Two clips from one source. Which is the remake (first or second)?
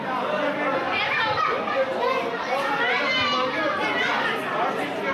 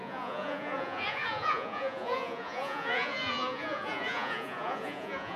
second